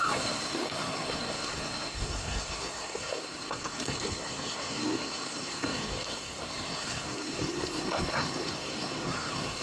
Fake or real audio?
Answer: fake